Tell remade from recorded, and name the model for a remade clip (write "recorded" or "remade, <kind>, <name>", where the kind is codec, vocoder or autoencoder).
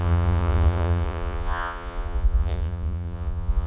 remade, vocoder, Vocos